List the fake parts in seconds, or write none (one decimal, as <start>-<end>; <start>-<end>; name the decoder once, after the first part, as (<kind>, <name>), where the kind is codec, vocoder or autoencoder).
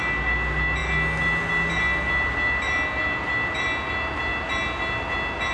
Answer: none